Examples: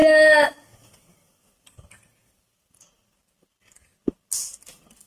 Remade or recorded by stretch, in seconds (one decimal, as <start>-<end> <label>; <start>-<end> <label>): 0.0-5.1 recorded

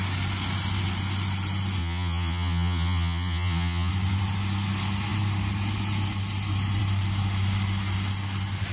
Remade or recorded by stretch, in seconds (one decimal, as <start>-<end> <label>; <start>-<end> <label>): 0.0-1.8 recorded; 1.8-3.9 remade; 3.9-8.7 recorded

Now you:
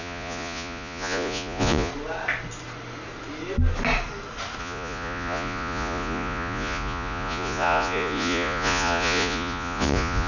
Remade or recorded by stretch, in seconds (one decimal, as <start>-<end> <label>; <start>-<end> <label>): 0.0-1.9 remade; 1.9-4.6 recorded; 4.6-10.3 remade

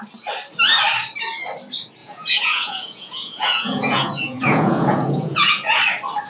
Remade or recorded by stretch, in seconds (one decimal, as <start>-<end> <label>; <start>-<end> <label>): 0.0-2.0 recorded; 2.0-5.8 remade; 5.8-6.3 recorded

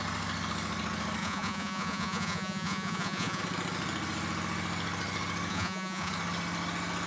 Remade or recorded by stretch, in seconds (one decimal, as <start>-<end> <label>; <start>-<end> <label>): 0.0-1.2 recorded; 1.2-3.4 remade; 3.4-5.5 recorded; 5.5-6.1 remade; 6.1-7.1 recorded

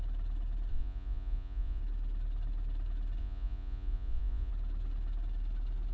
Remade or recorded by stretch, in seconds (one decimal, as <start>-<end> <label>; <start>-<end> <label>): 0.0-0.7 recorded; 0.7-1.8 remade; 1.8-3.2 recorded; 3.2-4.5 remade; 4.5-5.9 recorded

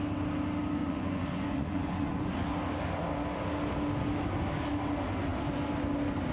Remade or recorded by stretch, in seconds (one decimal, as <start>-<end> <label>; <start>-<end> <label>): 0.0-0.8 recorded; 0.8-2.3 remade; 2.3-6.3 recorded

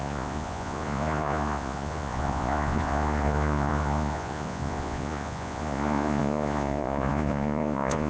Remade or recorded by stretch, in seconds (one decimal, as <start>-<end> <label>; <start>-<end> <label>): 0.0-8.1 remade